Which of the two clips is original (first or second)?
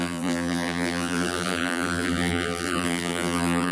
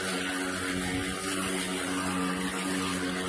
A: second